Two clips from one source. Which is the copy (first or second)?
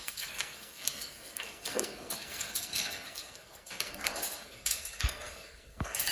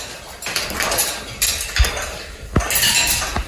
first